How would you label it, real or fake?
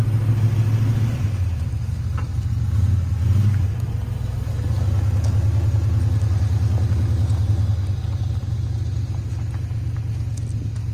real